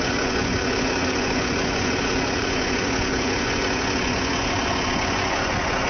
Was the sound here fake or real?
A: fake